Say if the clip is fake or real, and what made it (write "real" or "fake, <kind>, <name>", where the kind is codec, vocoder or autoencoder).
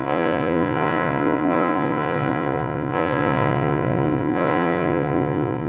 fake, vocoder, Vocos